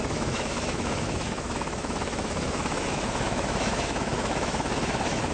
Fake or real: fake